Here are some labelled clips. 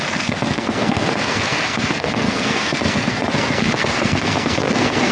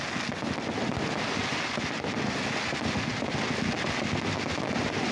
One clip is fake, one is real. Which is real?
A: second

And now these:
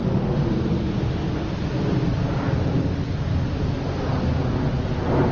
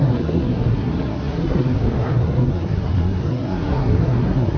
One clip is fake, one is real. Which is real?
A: first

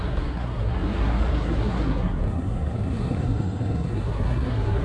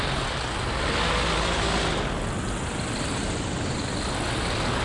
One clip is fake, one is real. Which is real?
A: second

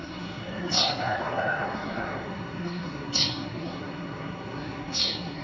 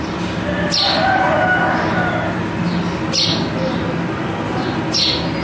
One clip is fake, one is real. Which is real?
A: second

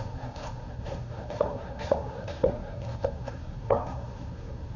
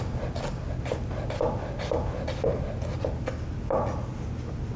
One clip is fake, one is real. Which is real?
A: second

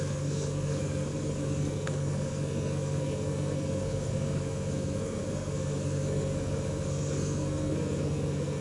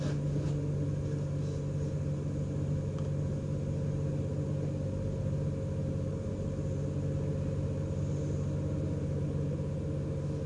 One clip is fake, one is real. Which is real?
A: second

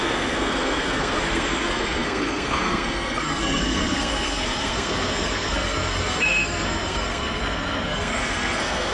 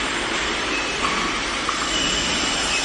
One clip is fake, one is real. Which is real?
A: second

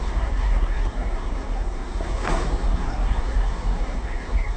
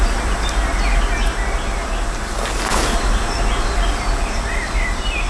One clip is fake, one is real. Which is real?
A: second